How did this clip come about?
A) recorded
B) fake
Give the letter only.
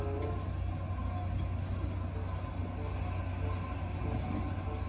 A